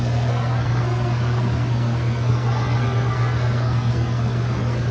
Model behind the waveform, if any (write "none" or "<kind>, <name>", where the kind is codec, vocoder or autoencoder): codec, SNAC